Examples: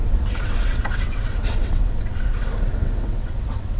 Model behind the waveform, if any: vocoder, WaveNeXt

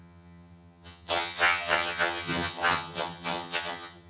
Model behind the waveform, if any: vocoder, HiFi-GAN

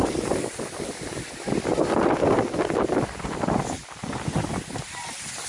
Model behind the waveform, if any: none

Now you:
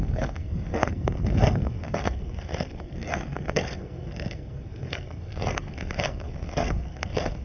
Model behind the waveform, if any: codec, SNAC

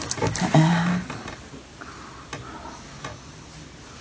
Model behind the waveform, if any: none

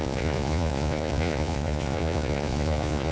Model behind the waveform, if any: vocoder, Vocos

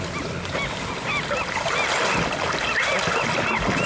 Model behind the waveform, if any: none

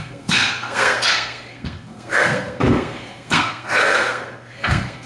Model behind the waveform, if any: codec, SNAC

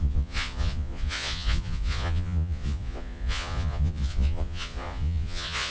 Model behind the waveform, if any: vocoder, Vocos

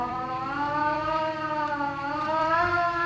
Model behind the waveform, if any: vocoder, BigVGAN v2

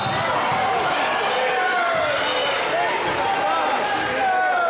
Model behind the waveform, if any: none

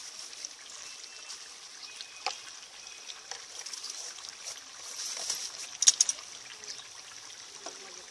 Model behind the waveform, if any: none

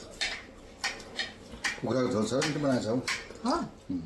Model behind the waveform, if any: none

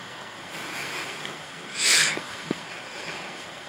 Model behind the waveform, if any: codec, SNAC